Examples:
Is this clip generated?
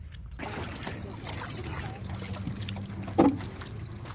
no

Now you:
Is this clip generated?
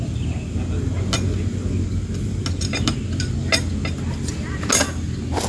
no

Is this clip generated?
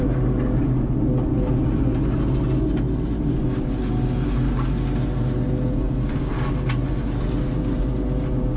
no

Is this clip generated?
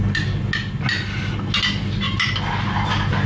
no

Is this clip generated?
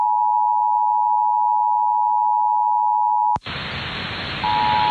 no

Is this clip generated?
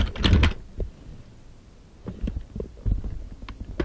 no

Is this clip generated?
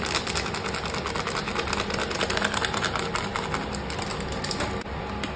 no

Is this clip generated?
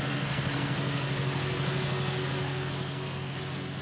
yes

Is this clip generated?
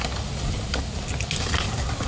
no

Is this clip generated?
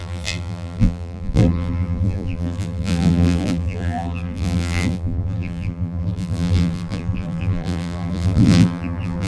yes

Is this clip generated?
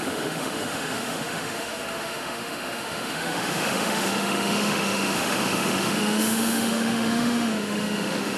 yes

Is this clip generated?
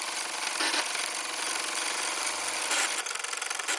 no